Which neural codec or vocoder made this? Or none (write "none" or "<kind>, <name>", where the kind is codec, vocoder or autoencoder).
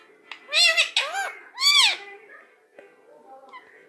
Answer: none